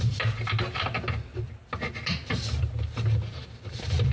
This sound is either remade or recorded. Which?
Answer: recorded